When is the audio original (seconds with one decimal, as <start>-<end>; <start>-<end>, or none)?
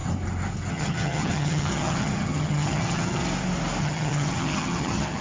0.0-0.7; 3.2-3.8